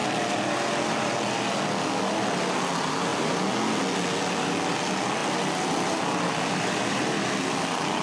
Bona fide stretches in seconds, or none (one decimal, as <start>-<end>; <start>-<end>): 0.0-5.2; 6.5-8.0